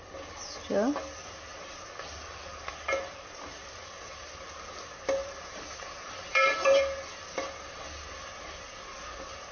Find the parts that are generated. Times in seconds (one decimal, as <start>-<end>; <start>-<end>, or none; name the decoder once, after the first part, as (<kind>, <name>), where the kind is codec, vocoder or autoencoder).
5.2-7.0 (vocoder, BigVGAN v2)